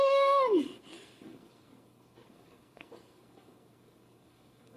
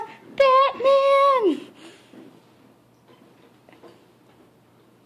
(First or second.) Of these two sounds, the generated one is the first